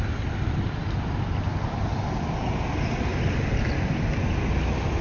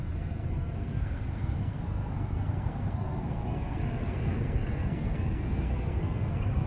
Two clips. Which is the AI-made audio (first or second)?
second